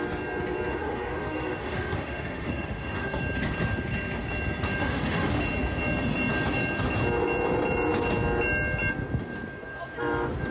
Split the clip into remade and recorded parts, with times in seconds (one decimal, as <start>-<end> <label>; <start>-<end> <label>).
0.0-0.7 recorded; 0.7-3.2 remade; 3.2-4.8 recorded; 4.8-5.4 remade; 5.4-10.5 recorded